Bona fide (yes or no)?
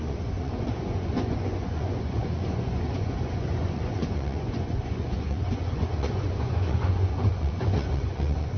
no